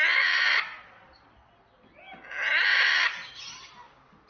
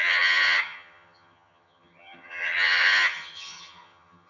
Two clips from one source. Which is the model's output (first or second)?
second